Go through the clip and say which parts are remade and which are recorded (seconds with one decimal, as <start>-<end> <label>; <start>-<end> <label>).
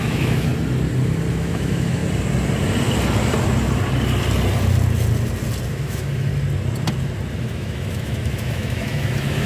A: 0.0-0.5 remade; 0.5-1.3 recorded; 1.3-2.0 remade; 2.0-5.7 recorded; 5.7-6.3 remade; 6.3-7.4 recorded; 7.4-9.5 remade